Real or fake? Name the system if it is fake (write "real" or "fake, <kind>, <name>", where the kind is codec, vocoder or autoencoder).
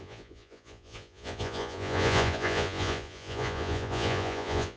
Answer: fake, vocoder, Vocos